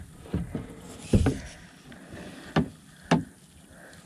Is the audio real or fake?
real